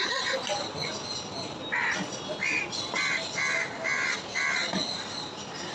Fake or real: real